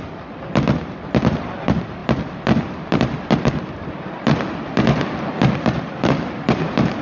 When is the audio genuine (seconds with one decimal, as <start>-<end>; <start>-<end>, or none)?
0.0-7.0